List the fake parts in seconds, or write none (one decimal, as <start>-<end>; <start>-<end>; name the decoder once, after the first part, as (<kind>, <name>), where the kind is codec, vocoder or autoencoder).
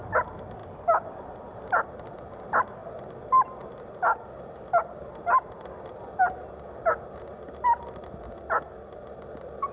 none